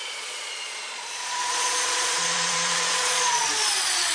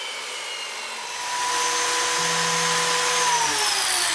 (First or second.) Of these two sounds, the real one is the second